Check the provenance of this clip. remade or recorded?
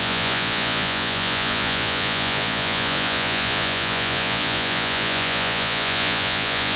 remade